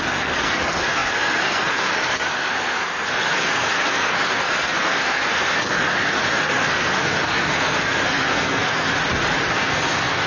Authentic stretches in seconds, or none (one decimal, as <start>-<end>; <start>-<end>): 8.9-9.5